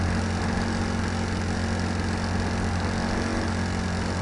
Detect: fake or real real